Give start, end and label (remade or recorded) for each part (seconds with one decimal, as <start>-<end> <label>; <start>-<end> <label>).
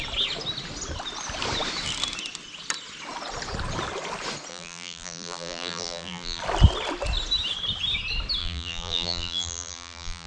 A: 0.0-4.5 recorded; 4.5-6.4 remade; 6.4-8.4 recorded; 8.4-10.3 remade